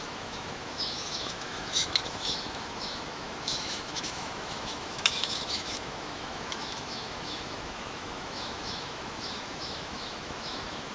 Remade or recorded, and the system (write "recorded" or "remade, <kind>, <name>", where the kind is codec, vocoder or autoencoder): remade, autoencoder, DAC-VAE